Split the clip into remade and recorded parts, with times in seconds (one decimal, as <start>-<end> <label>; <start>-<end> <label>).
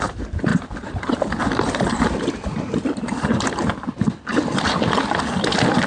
0.0-0.5 recorded; 0.5-1.4 remade; 1.4-5.9 recorded